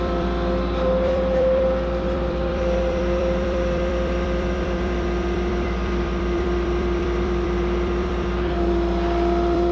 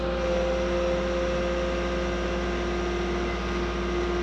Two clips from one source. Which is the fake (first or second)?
first